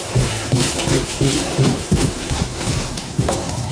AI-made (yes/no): yes